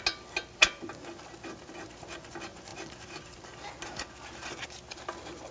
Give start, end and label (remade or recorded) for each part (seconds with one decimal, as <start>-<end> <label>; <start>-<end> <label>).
0.0-5.5 recorded